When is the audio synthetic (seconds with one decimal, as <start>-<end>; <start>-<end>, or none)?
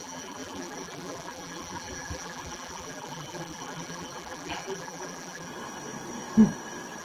0.0-5.5